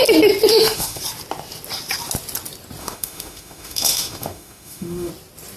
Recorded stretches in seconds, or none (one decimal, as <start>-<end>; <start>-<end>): 0.0-0.5; 1.0-2.8; 5.1-5.6